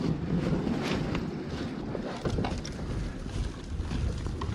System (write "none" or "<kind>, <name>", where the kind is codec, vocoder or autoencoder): none